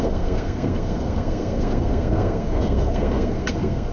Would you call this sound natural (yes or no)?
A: no